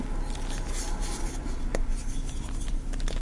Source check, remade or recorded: recorded